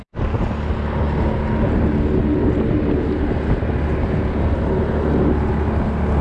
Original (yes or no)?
yes